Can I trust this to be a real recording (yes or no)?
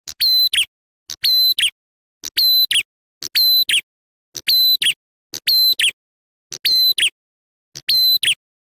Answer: yes